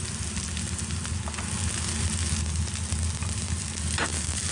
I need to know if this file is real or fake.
real